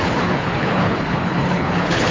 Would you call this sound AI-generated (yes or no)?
yes